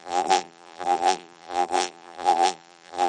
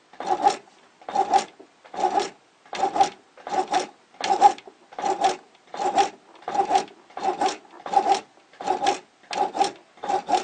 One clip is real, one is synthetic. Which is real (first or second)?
second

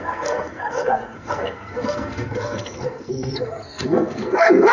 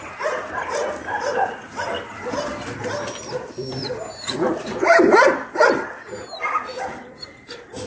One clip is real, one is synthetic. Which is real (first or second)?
second